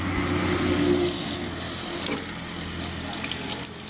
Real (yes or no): yes